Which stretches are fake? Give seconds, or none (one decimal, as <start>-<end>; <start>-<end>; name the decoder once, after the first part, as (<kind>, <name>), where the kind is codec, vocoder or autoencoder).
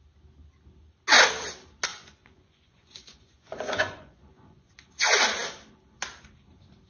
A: 1.9-4.7 (vocoder, Vocos)